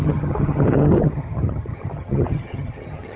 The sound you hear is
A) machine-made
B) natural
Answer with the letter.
A